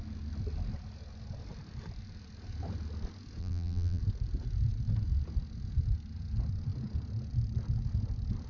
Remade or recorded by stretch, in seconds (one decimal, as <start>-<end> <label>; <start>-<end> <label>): 0.0-3.4 recorded; 3.4-4.0 remade; 4.0-8.5 recorded